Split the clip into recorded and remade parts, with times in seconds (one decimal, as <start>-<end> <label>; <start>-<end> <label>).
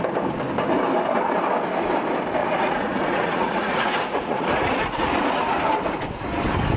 0.0-2.4 recorded; 2.4-5.3 remade; 5.3-6.8 recorded